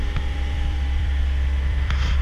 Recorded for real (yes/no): no